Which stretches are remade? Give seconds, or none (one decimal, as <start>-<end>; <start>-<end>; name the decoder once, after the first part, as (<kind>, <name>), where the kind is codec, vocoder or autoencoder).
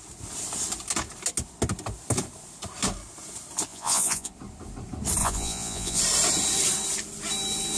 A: 3.7-4.3 (vocoder, Vocos); 5.2-6.0